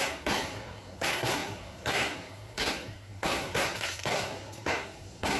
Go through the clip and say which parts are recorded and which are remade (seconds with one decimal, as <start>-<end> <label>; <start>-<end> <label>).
0.0-5.4 remade